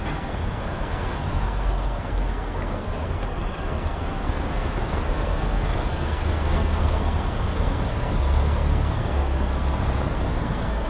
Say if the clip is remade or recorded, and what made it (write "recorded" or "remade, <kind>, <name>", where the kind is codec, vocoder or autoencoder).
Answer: remade, codec, SNAC